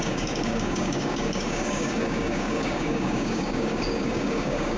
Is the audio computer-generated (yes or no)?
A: yes